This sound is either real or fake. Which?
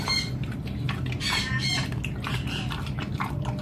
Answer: real